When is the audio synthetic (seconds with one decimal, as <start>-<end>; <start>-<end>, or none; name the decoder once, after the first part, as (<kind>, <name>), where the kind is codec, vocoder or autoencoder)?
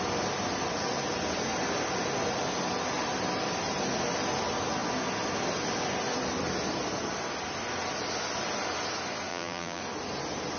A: 9.3-9.8 (vocoder, BigVGAN v2)